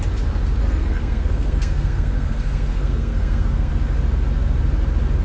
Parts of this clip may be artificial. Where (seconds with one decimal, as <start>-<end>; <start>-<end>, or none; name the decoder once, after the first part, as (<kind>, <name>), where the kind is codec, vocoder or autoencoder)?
0.6-3.7 (codec, SNAC)